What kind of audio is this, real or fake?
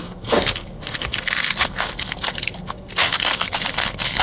fake